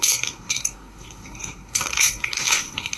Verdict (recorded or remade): remade